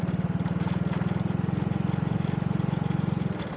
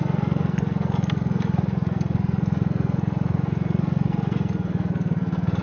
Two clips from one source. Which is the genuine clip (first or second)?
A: first